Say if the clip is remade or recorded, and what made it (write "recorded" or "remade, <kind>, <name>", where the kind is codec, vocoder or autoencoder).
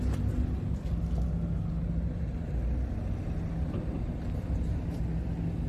recorded